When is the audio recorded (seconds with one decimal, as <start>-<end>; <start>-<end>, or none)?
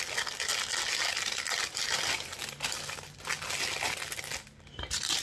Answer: 0.0-5.2